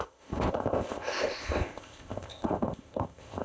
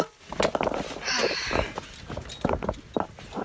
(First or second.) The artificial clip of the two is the first